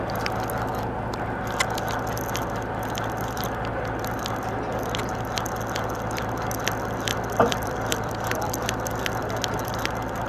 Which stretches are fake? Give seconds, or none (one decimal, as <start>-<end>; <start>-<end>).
7.1-9.3